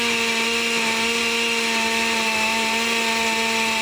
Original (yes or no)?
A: yes